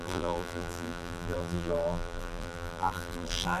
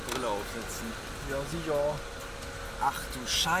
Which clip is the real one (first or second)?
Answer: second